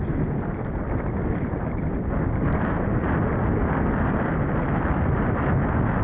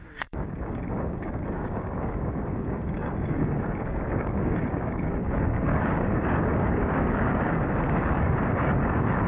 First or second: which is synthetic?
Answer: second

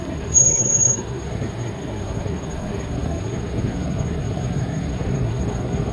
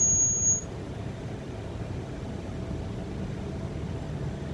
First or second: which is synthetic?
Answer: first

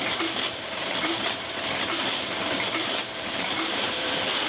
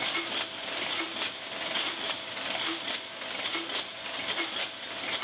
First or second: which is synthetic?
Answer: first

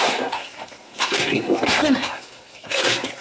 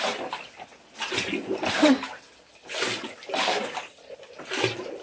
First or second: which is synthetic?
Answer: first